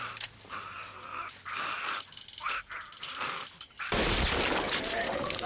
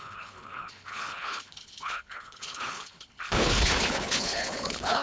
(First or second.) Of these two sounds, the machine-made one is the second